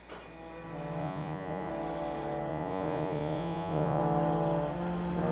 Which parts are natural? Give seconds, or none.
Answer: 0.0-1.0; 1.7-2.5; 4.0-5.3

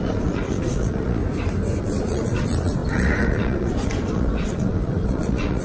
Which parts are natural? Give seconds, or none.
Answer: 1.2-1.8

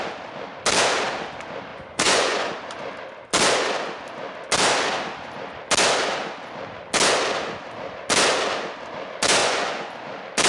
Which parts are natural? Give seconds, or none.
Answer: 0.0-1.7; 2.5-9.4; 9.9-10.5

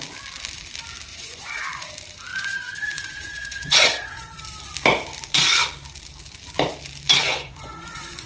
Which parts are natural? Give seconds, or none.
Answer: 0.0-1.1; 1.9-2.3; 4.4-7.2